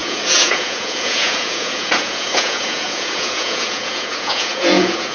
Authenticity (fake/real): fake